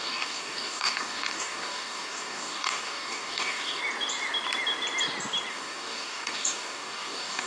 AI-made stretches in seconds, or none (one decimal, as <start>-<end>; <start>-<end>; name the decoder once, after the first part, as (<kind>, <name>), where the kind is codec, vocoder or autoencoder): 0.0-3.8 (codec, DAC); 5.5-7.5